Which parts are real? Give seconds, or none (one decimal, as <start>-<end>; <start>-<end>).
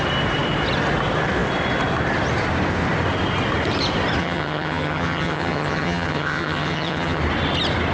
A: 0.0-4.2; 7.2-7.9